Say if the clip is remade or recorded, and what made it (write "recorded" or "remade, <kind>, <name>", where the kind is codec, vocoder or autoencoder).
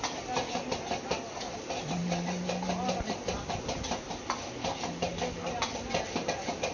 recorded